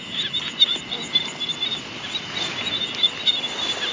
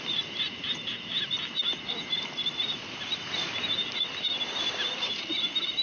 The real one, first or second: first